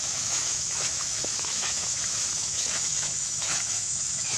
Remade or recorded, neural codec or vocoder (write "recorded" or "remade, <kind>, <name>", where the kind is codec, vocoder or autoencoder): remade, autoencoder, DAC-VAE